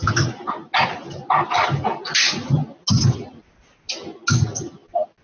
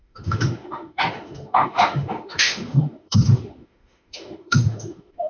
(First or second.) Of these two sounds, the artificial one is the second